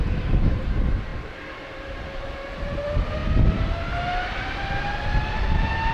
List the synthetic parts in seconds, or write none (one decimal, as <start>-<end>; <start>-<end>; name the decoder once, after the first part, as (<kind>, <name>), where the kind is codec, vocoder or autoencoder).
none